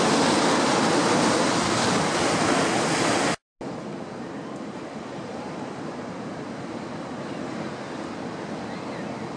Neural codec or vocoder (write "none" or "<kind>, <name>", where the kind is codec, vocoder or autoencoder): none